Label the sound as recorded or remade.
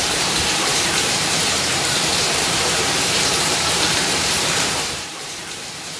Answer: remade